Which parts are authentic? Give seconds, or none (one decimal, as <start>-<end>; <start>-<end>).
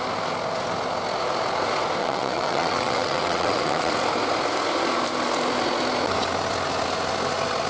0.0-2.0; 3.9-7.7